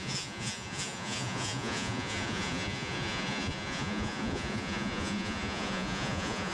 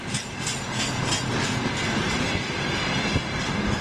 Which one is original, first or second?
second